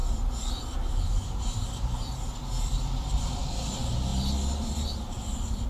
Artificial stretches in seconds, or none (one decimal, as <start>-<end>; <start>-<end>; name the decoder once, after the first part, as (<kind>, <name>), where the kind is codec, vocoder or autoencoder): 0.0-3.4 (vocoder, BigVGAN v2)